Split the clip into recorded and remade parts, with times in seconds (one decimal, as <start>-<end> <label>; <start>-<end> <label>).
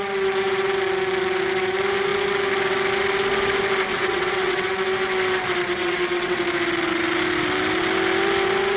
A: 0.0-3.9 recorded; 3.9-4.7 remade; 4.7-5.8 recorded; 5.8-6.4 remade; 6.4-8.8 recorded